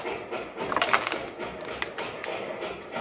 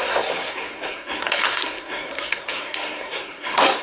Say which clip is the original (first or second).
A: first